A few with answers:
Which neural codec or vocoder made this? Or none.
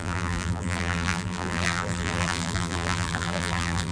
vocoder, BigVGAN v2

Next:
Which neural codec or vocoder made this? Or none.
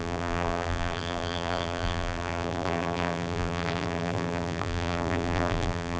vocoder, BigVGAN v2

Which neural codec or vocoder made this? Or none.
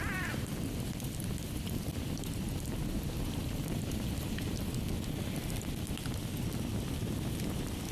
vocoder, BigVGAN v2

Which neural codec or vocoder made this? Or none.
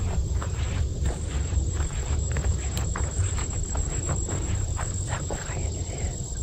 vocoder, BigVGAN v2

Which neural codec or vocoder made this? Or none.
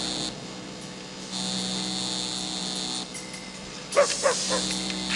none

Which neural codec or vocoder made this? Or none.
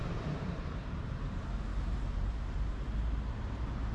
vocoder, BigVGAN v2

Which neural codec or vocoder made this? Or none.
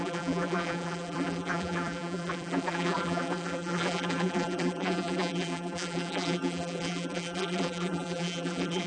vocoder, BigVGAN v2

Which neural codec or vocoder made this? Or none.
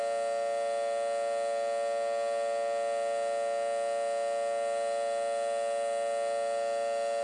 none